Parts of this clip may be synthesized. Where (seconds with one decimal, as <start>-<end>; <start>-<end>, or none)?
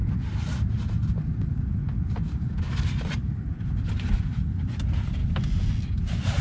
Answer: 3.8-5.2; 5.7-6.4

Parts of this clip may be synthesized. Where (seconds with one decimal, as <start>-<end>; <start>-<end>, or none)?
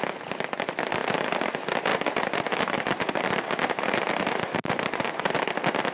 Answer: 1.0-1.5; 1.9-5.4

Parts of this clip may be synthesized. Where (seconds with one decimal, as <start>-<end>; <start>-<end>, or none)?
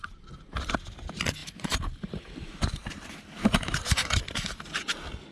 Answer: 1.4-4.6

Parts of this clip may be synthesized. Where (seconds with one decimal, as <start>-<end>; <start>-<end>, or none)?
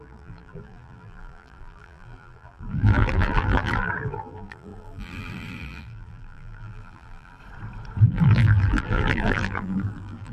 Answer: 0.0-7.4; 8.0-10.3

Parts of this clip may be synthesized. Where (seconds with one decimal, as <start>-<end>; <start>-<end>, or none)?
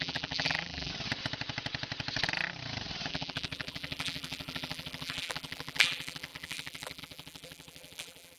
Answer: 0.0-0.9; 3.1-8.4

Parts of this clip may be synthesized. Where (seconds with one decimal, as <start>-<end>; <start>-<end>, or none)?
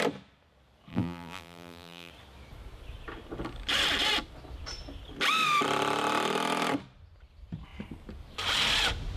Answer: 0.9-2.1